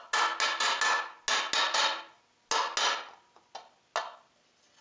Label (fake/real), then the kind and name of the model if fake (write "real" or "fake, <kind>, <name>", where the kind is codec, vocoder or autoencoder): real